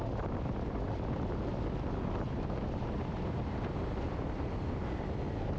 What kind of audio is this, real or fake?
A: real